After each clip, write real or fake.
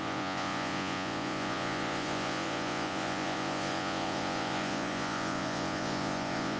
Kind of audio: fake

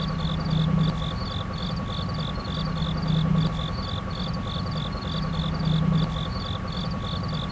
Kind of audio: real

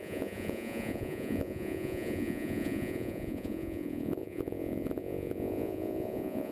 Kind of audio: fake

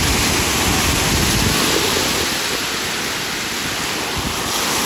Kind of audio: real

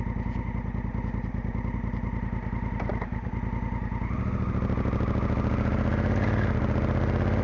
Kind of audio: real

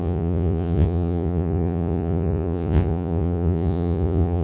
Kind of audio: fake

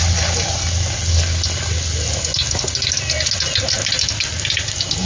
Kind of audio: real